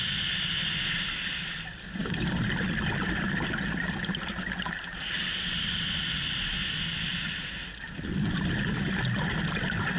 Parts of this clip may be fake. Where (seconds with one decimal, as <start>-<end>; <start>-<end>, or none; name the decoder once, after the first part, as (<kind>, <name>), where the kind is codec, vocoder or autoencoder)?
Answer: none

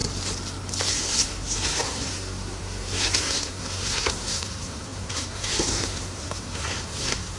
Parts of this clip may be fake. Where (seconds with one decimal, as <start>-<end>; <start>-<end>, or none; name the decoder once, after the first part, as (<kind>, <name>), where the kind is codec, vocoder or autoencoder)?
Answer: 0.9-7.4 (codec, SNAC)